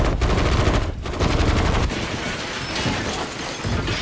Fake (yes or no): no